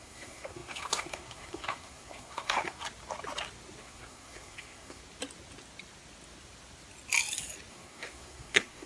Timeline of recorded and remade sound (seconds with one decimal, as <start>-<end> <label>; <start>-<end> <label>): 0.0-2.8 remade; 2.8-3.8 recorded; 3.8-5.0 remade; 5.0-7.7 recorded; 7.7-8.9 remade